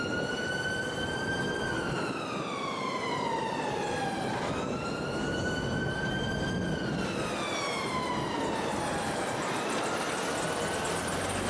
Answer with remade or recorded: recorded